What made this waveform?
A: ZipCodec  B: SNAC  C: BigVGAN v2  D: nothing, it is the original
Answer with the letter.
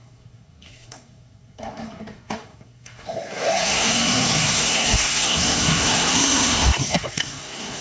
B